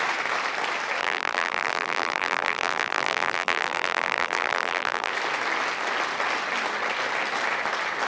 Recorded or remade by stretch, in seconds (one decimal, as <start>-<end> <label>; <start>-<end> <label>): 0.0-1.0 recorded; 1.0-5.1 remade; 5.1-8.1 recorded